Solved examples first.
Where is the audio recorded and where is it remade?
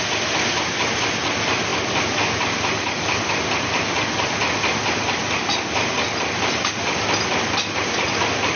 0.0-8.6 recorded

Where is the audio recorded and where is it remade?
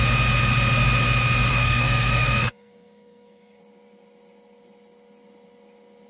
0.0-1.5 recorded; 1.5-3.6 remade; 3.6-6.1 recorded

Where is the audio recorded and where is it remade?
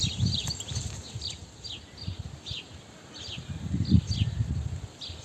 0.0-5.2 recorded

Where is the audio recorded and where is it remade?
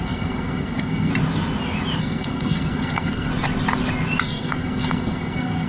0.0-1.1 remade; 1.1-2.0 recorded; 2.0-3.3 remade; 3.3-4.2 recorded; 4.2-5.7 remade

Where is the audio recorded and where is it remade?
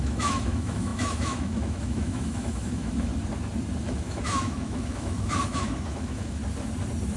0.0-3.1 remade; 3.1-3.8 recorded; 3.8-6.4 remade; 6.4-7.2 recorded